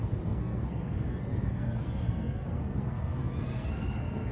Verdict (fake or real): fake